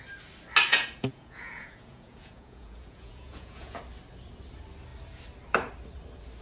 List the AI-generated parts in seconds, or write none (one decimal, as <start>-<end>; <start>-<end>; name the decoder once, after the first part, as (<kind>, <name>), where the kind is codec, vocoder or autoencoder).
0.7-3.8 (vocoder, Vocos)

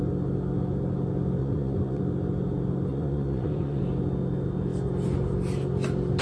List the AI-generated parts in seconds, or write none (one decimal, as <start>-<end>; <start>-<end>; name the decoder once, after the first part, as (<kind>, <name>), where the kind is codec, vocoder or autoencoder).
1.4-2.0 (vocoder, Vocos); 2.9-3.8

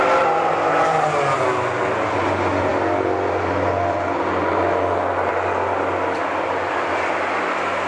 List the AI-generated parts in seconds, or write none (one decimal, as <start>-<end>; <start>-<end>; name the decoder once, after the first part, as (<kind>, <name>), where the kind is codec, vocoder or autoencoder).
none

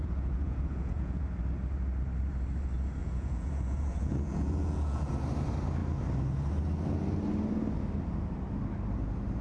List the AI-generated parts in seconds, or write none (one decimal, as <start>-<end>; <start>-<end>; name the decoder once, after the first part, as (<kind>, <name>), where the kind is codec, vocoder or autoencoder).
0.0-1.2 (vocoder, Vocos); 3.0-5.1

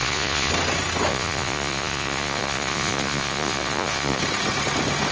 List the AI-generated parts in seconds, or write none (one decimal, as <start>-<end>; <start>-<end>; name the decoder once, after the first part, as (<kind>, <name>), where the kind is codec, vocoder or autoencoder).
0.0-0.5 (vocoder, Vocos); 1.1-4.2